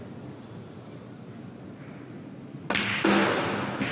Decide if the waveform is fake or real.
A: real